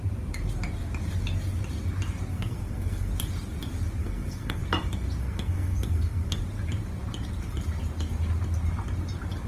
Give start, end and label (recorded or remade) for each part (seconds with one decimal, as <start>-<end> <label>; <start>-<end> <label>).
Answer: 0.0-2.3 recorded; 2.3-3.1 remade; 3.1-4.0 recorded; 4.0-4.6 remade; 4.6-5.2 recorded; 5.2-6.4 remade; 6.4-9.5 recorded